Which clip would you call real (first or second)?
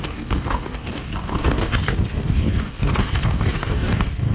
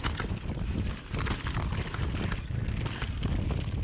second